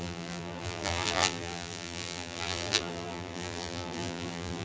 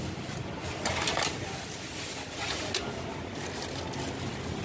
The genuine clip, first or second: second